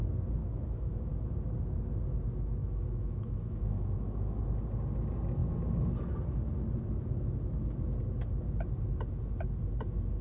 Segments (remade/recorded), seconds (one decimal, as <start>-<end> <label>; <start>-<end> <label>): 0.0-0.4 recorded; 0.4-1.1 remade; 1.1-2.6 recorded; 2.6-4.4 remade; 4.4-10.2 recorded